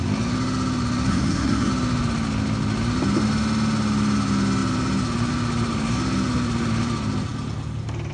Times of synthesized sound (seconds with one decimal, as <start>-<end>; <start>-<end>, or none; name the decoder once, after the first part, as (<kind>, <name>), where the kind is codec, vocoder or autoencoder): 1.1-1.7 (codec, SNAC)